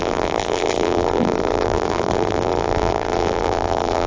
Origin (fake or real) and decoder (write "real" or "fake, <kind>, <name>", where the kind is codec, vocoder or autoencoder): fake, vocoder, BigVGAN v2